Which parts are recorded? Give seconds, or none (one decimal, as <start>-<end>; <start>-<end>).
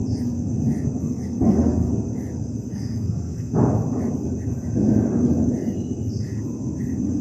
0.0-1.0; 1.9-2.7; 3.5-7.2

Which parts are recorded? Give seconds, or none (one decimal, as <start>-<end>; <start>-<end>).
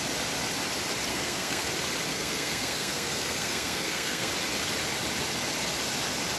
0.0-1.1; 1.7-2.1; 4.3-6.4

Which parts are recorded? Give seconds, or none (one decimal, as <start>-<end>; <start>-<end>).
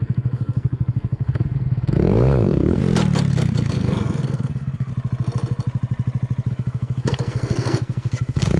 2.8-3.3; 4.9-6.5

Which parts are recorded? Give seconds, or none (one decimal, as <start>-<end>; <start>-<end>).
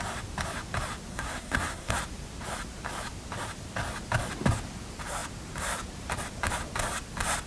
0.0-1.1; 1.9-7.5